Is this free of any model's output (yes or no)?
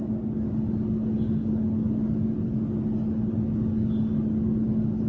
yes